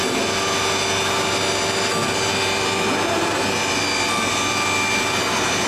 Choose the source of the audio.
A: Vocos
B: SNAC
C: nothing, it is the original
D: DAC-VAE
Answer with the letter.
C